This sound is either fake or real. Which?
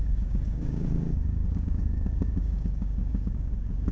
fake